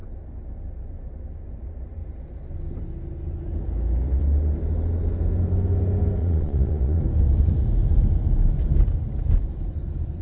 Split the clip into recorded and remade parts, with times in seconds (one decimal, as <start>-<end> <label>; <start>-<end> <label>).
0.0-6.2 recorded; 6.2-7.0 remade; 7.0-10.2 recorded